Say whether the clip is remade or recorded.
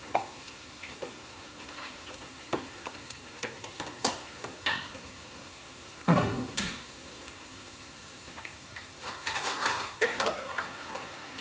remade